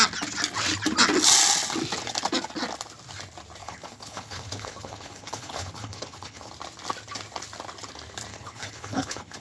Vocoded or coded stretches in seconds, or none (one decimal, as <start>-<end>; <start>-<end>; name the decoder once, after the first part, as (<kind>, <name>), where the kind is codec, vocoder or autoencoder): 3.6-6.5 (codec, HILCodec); 8.3-9.4